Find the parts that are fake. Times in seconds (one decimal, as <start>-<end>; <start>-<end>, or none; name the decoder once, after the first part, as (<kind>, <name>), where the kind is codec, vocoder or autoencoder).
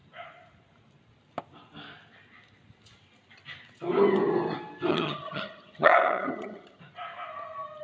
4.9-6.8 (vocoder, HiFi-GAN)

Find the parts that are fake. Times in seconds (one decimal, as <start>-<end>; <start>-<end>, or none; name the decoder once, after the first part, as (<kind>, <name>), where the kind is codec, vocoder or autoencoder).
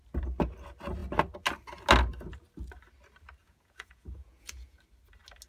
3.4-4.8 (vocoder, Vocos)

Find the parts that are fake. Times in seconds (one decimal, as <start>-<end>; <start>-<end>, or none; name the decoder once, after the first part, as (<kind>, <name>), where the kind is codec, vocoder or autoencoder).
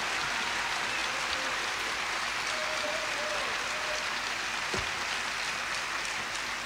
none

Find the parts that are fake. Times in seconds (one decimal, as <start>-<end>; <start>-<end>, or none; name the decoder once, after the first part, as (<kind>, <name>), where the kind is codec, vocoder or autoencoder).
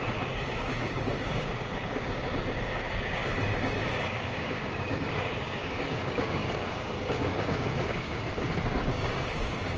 0.0-9.8 (codec, DAC)